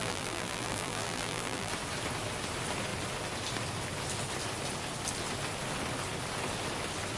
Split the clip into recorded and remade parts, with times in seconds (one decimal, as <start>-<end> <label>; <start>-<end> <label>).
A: 0.0-1.7 remade; 1.7-7.2 recorded